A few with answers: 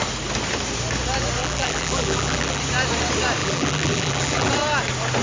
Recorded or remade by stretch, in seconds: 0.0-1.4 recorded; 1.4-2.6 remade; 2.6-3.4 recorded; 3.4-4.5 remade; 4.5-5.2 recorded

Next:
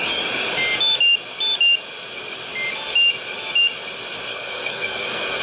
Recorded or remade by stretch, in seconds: 0.0-4.3 recorded; 4.3-5.4 remade